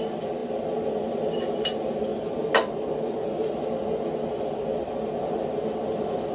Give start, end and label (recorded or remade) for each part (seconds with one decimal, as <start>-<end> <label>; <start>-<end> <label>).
0.0-6.3 recorded